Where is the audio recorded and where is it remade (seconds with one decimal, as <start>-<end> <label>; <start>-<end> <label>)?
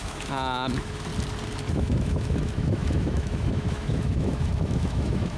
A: 0.0-1.1 remade; 1.1-1.7 recorded; 1.7-5.4 remade